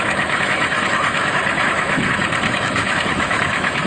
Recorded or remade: remade